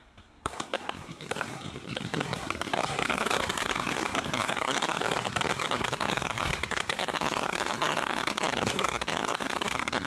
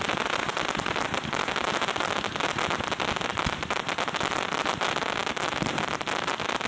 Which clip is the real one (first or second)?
second